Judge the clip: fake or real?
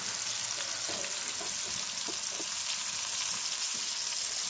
real